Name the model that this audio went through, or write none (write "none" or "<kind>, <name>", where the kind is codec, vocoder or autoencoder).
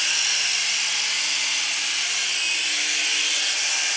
none